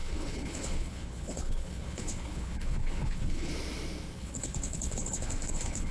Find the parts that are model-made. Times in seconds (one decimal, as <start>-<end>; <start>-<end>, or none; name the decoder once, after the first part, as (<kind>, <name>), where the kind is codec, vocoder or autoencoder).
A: 0.0-3.5 (codec, HILCodec); 4.2-5.9